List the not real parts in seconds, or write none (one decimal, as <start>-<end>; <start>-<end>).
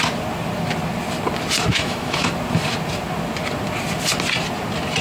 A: 1.7-2.3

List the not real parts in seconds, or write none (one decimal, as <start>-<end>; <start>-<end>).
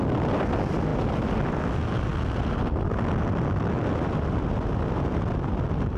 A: none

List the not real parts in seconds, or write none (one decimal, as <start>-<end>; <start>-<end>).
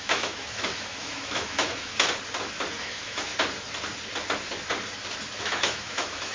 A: 0.0-1.9; 2.8-3.3; 5.4-6.3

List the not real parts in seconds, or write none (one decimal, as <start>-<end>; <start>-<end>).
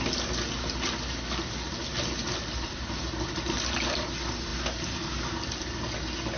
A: none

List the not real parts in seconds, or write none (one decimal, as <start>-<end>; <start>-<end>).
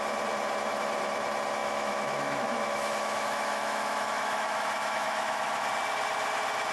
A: 1.6-5.6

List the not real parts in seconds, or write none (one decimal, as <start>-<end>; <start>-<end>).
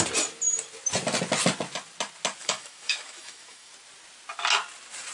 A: 2.4-3.7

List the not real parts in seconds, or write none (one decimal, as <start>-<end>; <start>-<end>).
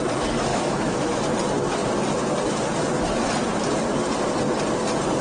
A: 0.5-1.2